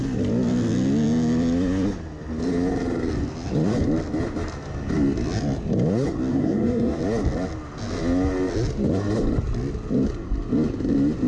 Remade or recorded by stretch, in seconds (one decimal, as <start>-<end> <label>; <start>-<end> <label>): 0.0-6.3 recorded; 6.3-7.0 remade; 7.0-11.3 recorded